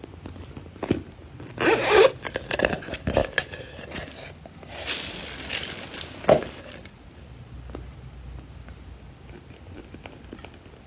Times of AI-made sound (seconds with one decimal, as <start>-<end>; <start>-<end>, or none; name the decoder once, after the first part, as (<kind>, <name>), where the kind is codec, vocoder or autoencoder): none